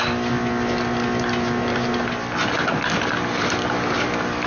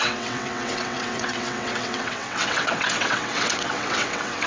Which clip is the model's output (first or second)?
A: second